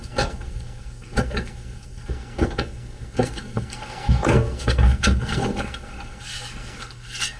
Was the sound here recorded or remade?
remade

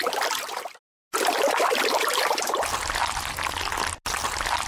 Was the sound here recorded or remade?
recorded